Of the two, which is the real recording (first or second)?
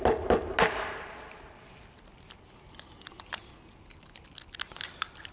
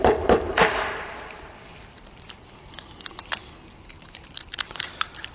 first